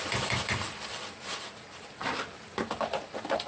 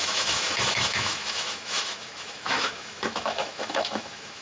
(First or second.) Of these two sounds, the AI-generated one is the second